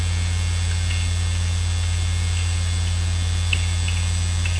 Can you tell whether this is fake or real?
real